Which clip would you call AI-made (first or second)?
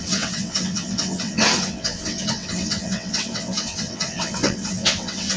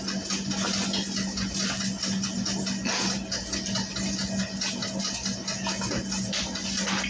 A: first